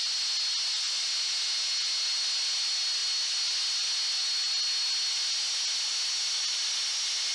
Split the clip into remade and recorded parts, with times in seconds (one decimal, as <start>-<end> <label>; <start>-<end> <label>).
0.0-7.3 recorded